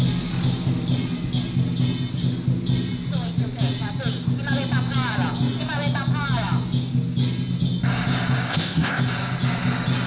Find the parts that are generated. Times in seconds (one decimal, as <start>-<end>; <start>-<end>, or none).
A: 8.5-9.0

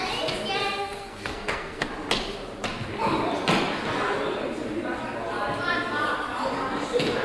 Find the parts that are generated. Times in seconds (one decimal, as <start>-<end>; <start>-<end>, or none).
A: 0.8-1.9

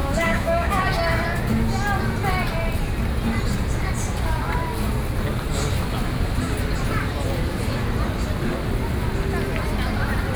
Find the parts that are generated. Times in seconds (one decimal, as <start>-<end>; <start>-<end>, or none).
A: 0.0-0.8